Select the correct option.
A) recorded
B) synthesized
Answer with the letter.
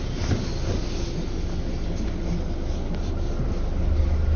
A